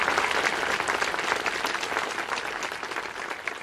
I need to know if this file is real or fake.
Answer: real